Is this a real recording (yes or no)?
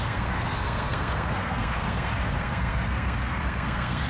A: no